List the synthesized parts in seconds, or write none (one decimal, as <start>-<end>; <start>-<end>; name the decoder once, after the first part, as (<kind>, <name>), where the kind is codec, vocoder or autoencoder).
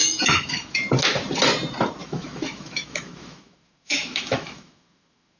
0.0-0.9 (autoencoder, DAC-VAE); 2.0-5.4